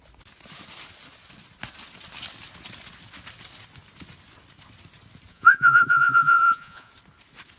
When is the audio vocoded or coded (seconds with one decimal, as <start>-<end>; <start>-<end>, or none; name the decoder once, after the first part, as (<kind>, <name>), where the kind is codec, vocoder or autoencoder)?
5.3-6.9 (vocoder, Vocos)